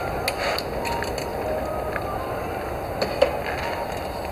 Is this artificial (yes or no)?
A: no